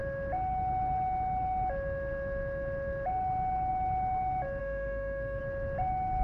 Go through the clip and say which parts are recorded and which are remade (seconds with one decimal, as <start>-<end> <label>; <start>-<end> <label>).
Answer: 0.0-4.6 recorded; 4.6-5.4 remade; 5.4-6.2 recorded